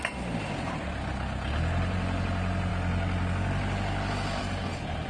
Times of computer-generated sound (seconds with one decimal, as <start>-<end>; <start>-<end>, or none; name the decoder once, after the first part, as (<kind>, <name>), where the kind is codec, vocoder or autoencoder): none